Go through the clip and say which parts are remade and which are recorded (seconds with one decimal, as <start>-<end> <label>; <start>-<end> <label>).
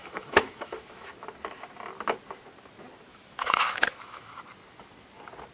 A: 0.0-1.1 remade; 1.1-3.1 recorded; 3.1-4.4 remade; 4.4-5.5 recorded